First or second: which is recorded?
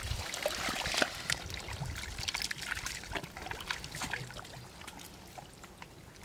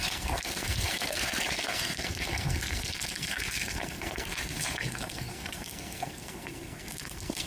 first